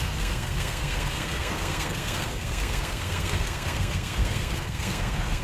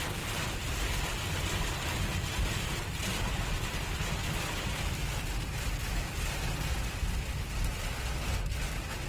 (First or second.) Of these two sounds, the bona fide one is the second